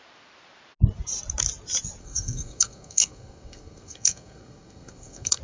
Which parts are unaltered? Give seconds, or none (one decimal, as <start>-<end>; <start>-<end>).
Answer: 0.0-2.0